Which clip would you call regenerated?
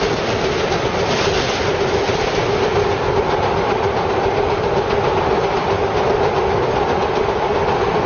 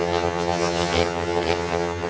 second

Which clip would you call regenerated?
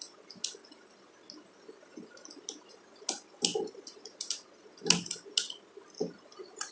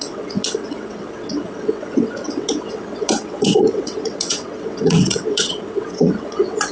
second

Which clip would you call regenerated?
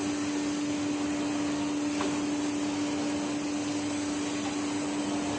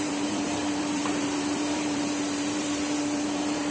second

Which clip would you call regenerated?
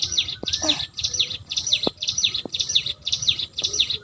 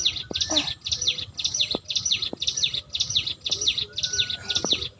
first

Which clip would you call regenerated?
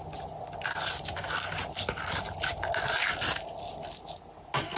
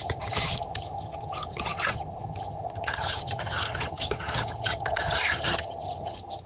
second